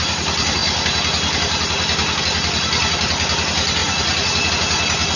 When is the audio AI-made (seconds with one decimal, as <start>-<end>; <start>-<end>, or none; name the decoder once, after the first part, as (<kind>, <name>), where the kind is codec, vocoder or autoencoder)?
3.8-4.5 (vocoder, Vocos)